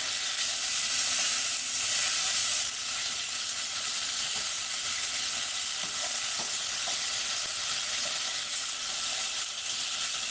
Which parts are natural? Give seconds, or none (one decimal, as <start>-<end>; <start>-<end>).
0.0-2.4; 4.5-6.0; 7.2-10.3